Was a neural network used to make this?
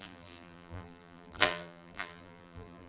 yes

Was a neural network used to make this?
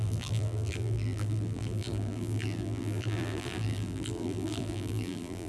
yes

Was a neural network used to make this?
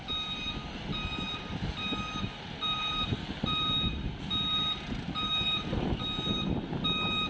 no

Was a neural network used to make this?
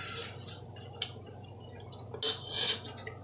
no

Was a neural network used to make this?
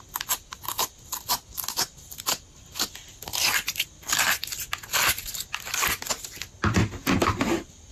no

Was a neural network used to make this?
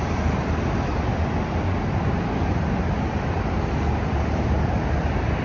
no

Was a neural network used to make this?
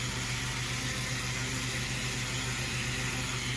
no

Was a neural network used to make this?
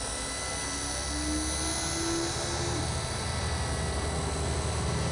no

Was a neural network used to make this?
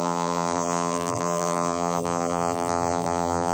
yes